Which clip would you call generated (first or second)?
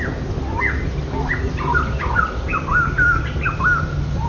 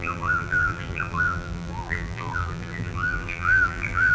second